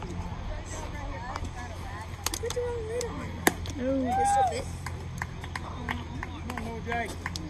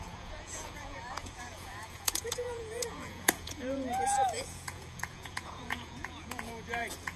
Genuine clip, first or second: first